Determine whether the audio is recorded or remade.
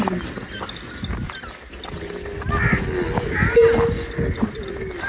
recorded